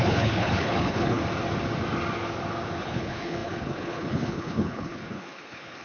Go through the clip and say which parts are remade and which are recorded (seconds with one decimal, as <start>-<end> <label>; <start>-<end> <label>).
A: 0.0-1.2 remade; 1.2-2.8 recorded; 2.8-5.8 remade